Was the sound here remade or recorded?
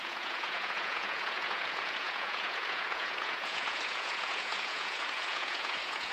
remade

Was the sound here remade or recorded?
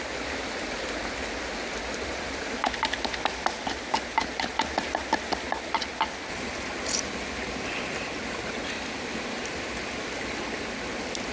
recorded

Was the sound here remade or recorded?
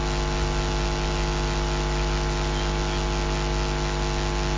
recorded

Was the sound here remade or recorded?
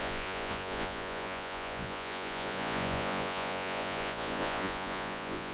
remade